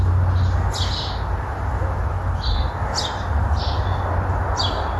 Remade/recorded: recorded